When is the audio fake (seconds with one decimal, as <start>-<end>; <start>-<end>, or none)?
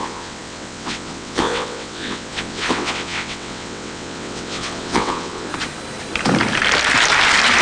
0.0-5.5